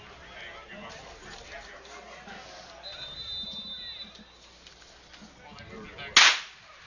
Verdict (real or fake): real